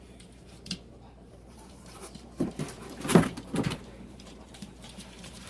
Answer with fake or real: fake